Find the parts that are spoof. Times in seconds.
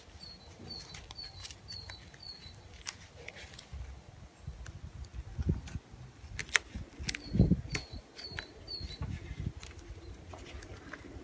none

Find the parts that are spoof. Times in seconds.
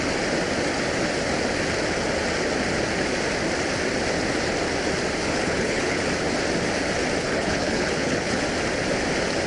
5.2-6.0; 7.2-8.4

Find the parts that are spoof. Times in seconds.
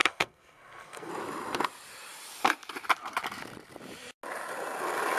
0.0-1.1